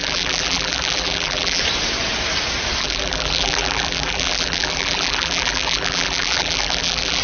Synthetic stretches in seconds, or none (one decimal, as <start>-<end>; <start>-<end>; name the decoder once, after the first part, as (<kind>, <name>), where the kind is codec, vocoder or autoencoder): 0.0-1.6 (vocoder, BigVGAN v2); 2.8-7.2